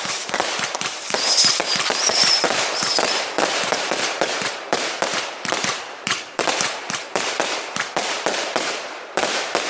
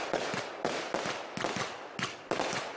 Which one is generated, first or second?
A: first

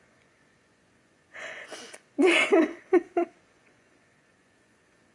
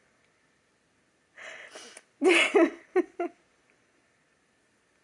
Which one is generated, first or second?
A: first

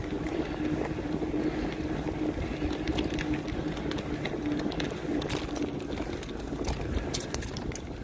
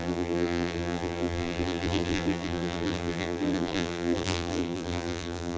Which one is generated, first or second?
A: second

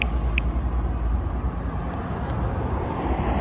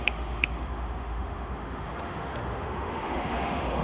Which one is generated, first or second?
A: second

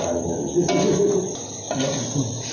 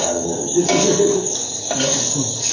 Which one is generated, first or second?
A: second